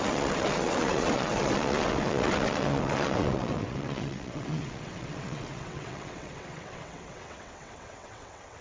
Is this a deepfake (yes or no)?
yes